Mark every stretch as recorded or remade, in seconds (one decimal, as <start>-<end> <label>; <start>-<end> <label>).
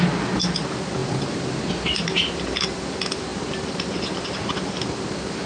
0.0-5.5 recorded